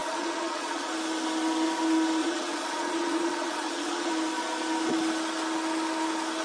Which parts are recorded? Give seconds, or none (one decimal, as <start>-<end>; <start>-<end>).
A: 0.9-2.2; 4.1-6.4